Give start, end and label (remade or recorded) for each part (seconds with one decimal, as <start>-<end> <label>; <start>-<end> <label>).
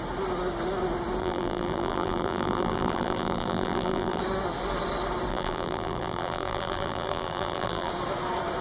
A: 0.0-1.2 recorded; 1.2-4.2 remade; 4.2-5.3 recorded; 5.3-7.9 remade; 7.9-8.6 recorded